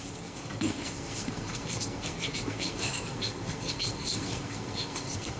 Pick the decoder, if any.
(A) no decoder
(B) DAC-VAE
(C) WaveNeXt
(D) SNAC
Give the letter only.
D